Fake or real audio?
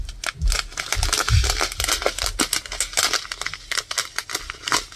real